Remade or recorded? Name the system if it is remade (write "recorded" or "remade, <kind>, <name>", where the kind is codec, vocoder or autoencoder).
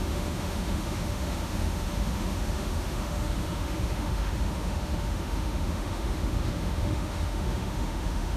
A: remade, autoencoder, DAC-VAE